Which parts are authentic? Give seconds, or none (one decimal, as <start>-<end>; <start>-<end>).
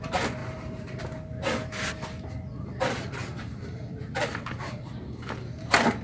0.0-0.4; 1.0-3.3; 4.9-6.0